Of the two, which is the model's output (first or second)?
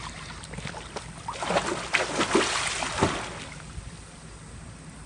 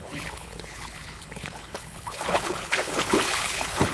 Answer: second